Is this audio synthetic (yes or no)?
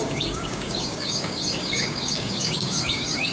yes